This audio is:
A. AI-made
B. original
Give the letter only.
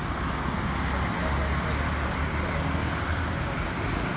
B